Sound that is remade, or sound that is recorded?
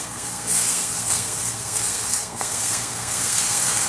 remade